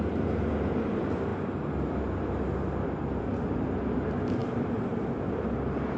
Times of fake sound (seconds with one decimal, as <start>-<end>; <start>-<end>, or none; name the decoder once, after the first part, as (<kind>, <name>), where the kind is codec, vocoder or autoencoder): 4.4-5.4 (vocoder, BigVGAN v2)